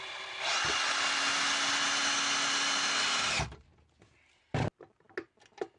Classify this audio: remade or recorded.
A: recorded